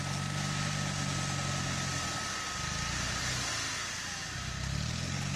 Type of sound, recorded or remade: recorded